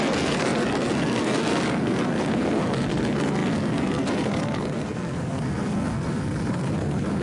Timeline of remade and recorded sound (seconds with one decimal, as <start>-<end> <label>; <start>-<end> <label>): 0.0-7.2 remade